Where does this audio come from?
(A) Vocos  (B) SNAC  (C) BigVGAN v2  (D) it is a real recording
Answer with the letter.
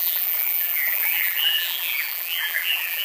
C